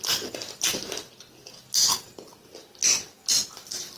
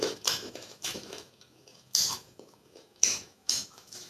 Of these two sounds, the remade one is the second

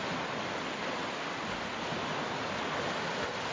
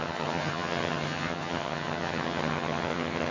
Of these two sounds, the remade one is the second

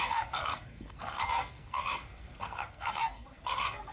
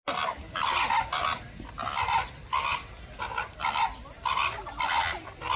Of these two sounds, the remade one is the first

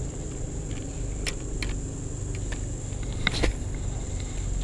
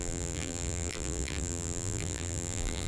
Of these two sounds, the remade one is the second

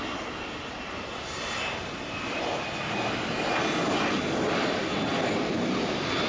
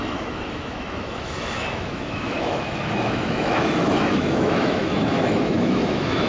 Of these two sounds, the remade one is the second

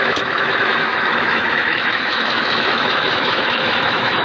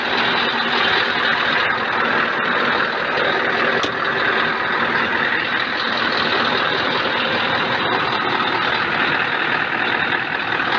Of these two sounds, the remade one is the first